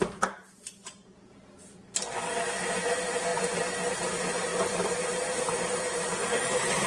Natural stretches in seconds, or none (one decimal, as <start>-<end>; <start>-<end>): 0.0-6.9